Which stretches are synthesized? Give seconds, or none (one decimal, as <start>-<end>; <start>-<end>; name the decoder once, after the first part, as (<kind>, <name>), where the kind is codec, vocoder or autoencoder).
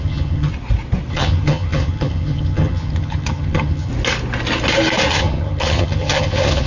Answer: 0.0-0.5 (vocoder, HiFi-GAN); 1.1-3.9; 5.1-6.7